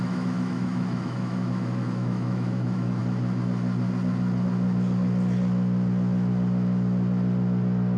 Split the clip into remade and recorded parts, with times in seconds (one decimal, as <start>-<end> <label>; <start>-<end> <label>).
0.0-3.0 remade; 3.0-8.0 recorded